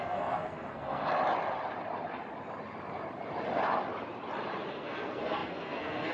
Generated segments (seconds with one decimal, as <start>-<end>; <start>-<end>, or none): 0.0-1.0; 4.7-6.1